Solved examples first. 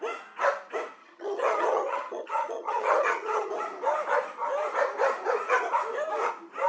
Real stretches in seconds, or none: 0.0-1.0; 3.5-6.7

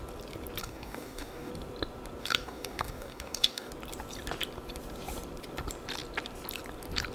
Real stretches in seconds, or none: 0.0-0.6; 1.5-2.2; 3.7-7.1